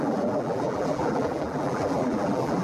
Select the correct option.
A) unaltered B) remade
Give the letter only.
B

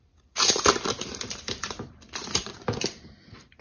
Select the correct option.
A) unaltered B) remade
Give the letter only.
B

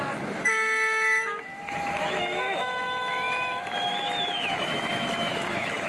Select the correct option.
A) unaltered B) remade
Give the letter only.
B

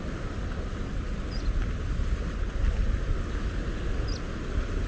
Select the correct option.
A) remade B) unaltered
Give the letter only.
B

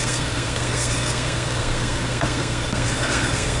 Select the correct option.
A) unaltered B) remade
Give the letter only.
B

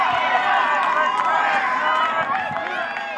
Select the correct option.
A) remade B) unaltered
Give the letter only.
B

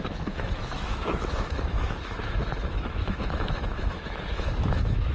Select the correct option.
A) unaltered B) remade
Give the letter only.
B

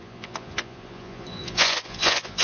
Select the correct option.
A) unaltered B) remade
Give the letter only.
B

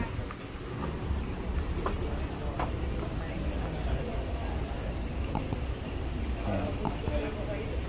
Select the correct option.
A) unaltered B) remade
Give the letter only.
A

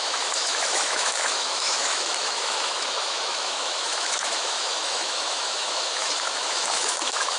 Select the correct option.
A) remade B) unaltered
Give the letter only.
A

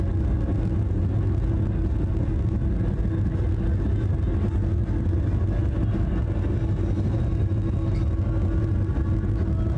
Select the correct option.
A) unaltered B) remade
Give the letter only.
A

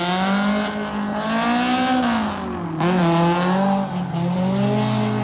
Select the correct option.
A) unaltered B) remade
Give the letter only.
A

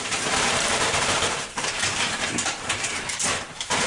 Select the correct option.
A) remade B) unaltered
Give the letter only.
A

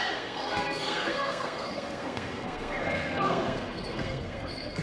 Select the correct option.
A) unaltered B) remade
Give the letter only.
B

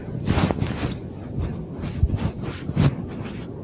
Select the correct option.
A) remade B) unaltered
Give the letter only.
B